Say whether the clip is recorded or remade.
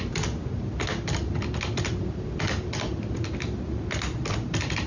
recorded